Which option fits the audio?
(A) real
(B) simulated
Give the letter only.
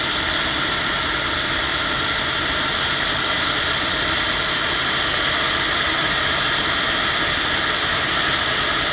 A